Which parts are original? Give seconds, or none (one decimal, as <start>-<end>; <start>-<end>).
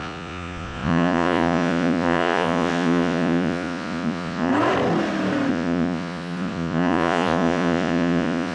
4.5-5.5